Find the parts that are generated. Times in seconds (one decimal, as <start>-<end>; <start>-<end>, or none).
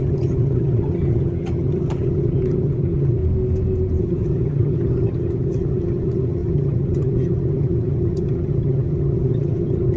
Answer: 0.0-3.2; 4.0-10.0